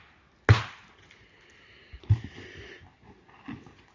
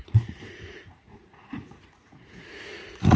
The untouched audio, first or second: first